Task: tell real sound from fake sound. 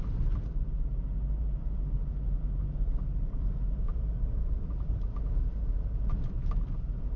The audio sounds fake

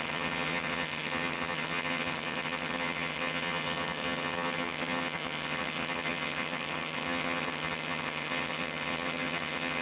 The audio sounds fake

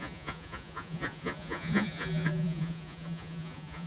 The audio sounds fake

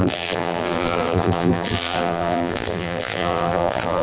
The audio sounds fake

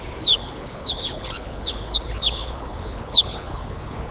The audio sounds fake